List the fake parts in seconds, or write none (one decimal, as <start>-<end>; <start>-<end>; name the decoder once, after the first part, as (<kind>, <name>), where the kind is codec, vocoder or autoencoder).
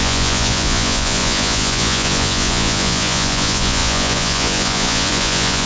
0.0-5.7 (vocoder, Vocos)